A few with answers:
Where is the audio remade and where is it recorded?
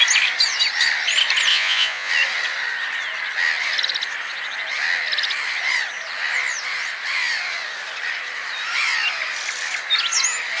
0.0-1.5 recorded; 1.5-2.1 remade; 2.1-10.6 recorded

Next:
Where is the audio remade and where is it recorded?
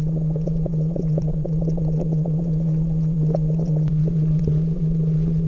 0.0-5.5 remade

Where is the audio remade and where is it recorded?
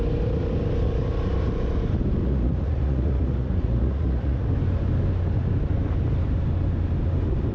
0.0-2.2 recorded; 2.2-4.5 remade; 4.5-7.5 recorded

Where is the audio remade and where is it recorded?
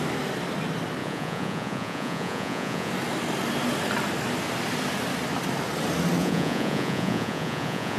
0.0-1.0 recorded; 1.0-2.9 remade; 2.9-6.2 recorded; 6.2-8.0 remade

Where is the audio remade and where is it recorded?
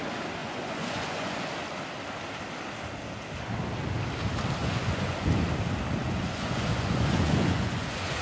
0.0-0.4 recorded; 0.4-1.5 remade; 1.5-4.6 recorded; 4.6-5.3 remade; 5.3-6.0 recorded; 6.0-8.2 remade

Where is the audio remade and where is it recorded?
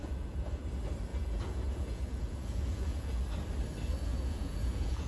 0.0-0.6 remade; 0.6-1.1 recorded; 1.1-3.2 remade; 3.2-4.1 recorded; 4.1-5.1 remade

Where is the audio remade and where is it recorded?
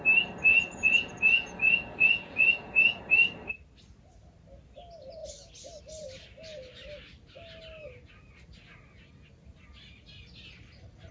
0.0-0.5 recorded; 0.5-3.0 remade; 3.0-11.1 recorded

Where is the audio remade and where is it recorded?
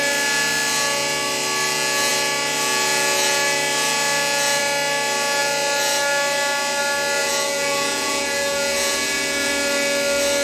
0.0-7.2 recorded; 7.2-9.5 remade; 9.5-10.4 recorded